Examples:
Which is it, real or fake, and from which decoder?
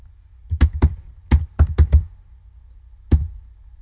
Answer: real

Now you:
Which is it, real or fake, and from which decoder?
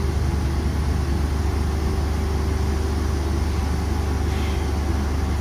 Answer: real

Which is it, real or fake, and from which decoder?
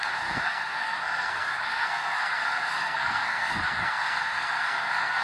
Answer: fake, codec, SNAC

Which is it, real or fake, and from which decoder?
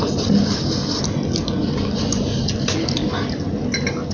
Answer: real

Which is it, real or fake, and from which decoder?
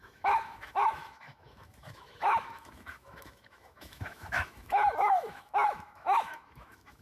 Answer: fake, autoencoder, DAC-VAE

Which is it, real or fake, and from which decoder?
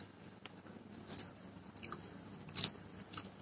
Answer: real